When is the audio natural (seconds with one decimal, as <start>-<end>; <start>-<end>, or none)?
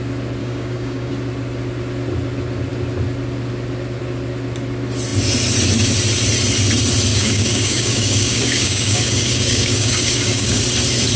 0.0-0.4; 1.1-7.1; 10.6-11.2